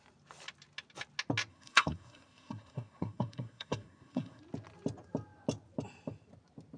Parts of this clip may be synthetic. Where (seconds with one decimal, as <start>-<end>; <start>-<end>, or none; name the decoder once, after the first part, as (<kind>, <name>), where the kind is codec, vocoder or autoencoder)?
1.5-4.4 (codec, SNAC)